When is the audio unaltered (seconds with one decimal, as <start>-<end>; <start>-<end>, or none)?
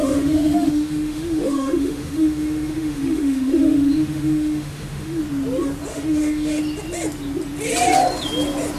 5.2-5.9; 6.6-8.8